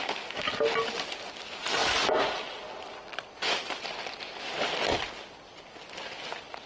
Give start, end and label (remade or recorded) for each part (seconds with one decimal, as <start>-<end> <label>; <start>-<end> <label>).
0.0-6.7 recorded